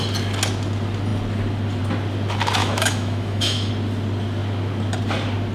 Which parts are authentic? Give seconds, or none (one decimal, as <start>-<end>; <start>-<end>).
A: 0.0-2.6; 3.7-5.5